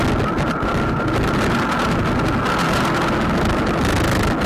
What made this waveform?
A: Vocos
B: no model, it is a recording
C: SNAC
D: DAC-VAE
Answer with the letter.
B